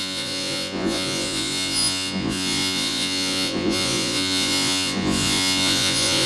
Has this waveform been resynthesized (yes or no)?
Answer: yes